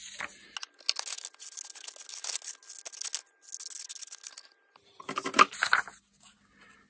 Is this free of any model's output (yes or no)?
yes